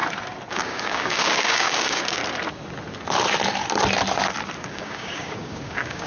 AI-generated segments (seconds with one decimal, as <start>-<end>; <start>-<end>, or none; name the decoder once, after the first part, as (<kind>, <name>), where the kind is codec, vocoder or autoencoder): 0.5-2.2 (codec, DAC); 4.6-6.1